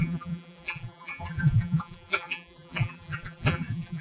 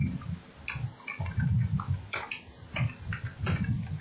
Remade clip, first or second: first